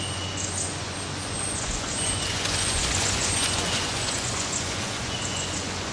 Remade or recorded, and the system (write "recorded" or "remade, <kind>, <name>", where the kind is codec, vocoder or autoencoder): remade, vocoder, Vocos